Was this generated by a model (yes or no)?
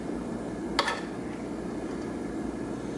no